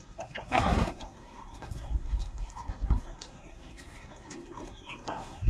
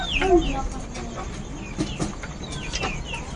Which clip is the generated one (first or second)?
first